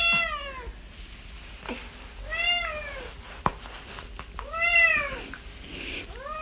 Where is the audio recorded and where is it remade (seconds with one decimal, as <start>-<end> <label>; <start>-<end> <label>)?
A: 0.0-6.4 recorded